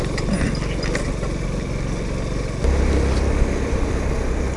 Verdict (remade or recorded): recorded